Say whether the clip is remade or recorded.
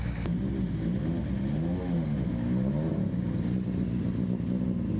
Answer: recorded